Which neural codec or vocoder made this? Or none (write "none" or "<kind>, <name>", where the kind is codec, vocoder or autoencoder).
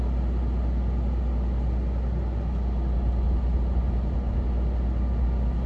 none